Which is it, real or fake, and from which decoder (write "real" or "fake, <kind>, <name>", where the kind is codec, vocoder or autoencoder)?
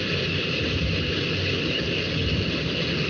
real